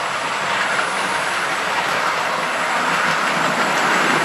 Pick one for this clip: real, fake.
real